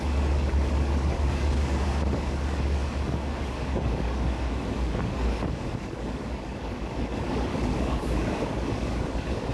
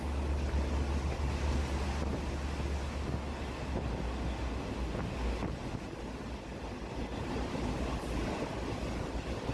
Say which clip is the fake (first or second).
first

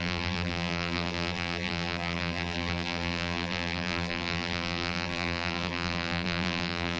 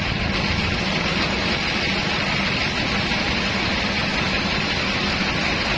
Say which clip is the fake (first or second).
first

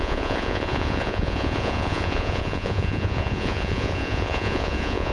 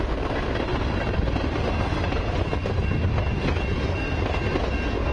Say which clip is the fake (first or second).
first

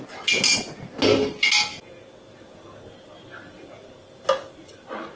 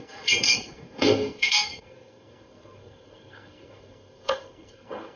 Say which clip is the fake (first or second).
second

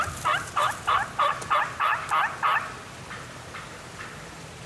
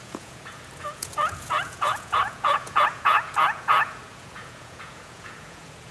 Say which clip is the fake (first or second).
second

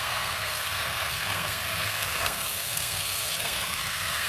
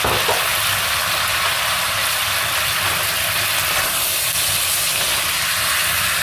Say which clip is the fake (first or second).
first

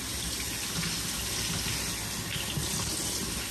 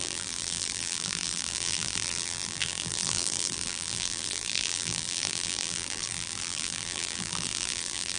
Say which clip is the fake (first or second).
second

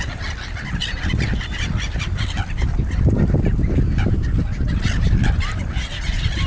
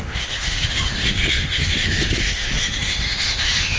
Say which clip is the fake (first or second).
second